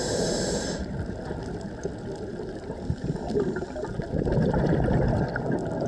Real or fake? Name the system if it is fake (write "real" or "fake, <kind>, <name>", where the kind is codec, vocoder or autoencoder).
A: real